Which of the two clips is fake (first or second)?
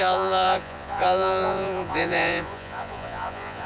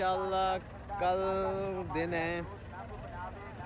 first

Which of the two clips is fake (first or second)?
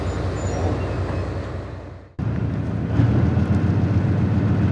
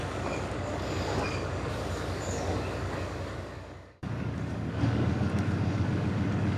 second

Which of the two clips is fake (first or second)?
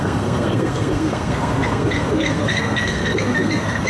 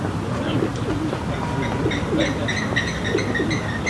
first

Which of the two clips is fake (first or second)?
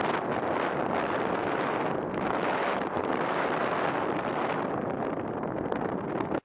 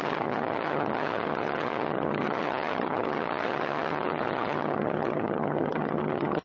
second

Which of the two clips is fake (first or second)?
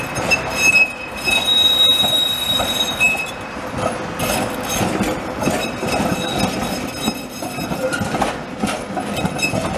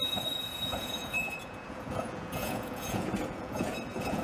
second